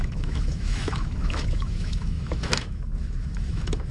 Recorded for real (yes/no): no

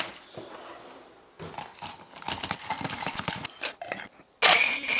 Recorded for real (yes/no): yes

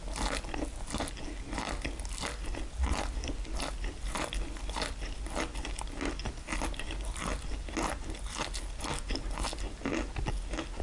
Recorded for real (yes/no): yes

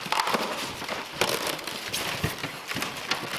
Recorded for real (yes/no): yes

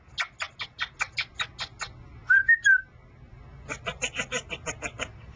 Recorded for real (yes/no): yes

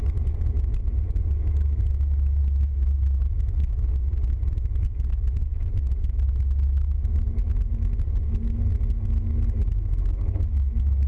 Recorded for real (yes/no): no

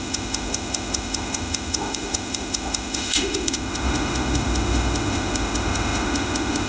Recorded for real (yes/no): no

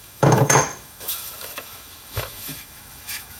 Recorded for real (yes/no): no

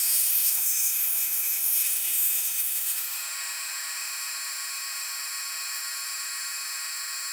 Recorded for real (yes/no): no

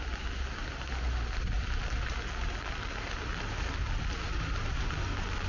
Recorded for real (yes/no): yes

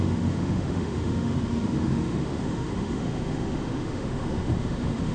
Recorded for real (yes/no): no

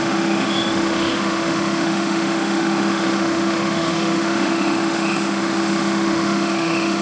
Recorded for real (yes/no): no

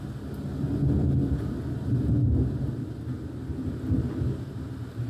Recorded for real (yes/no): yes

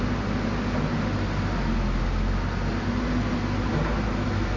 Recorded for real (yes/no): yes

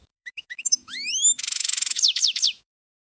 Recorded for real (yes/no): no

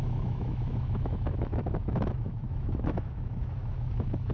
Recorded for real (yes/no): no